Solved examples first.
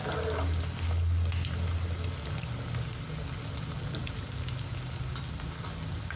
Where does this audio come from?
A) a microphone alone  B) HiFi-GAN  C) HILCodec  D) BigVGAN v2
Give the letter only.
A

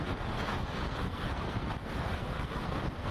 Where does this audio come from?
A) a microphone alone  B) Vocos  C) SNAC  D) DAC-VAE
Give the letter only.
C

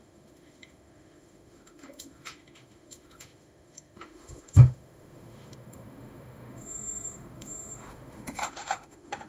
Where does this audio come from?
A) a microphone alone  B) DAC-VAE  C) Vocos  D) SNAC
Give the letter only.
B